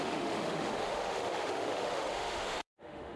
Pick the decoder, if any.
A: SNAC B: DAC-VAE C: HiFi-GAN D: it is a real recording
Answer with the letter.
B